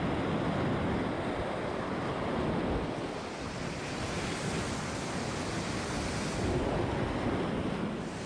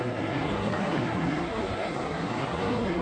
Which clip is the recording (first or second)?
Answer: first